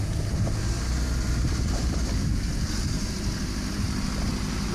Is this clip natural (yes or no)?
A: yes